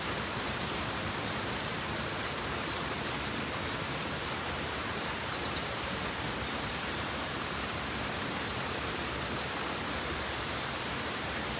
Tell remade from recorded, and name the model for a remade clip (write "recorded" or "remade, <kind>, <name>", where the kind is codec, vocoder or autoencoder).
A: remade, vocoder, BigVGAN v2